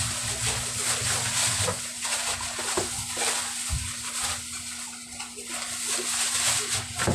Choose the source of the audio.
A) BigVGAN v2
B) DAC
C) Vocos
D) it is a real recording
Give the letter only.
D